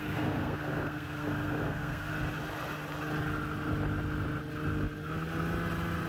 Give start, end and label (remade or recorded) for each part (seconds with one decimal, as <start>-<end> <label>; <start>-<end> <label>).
0.0-2.1 remade; 2.1-6.1 recorded